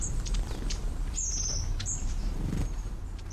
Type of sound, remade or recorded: remade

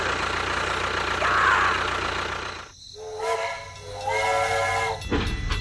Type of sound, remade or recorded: recorded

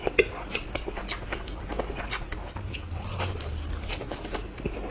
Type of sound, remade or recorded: recorded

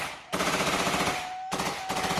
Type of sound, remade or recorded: recorded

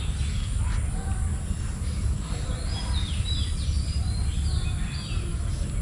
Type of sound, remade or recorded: recorded